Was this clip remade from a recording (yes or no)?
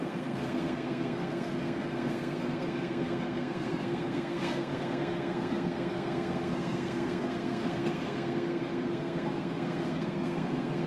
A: yes